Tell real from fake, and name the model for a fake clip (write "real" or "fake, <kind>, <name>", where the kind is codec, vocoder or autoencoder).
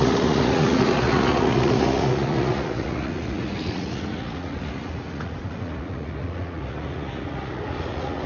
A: fake, vocoder, Vocos